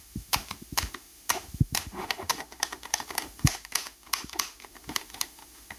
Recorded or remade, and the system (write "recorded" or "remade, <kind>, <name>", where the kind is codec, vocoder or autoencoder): remade, autoencoder, DAC-VAE